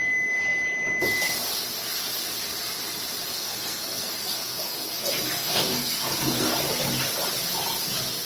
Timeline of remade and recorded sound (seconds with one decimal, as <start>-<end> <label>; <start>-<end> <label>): 0.0-3.3 recorded; 3.3-6.5 remade; 6.5-8.3 recorded